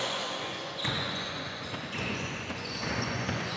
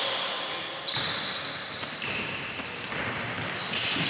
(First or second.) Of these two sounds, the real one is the second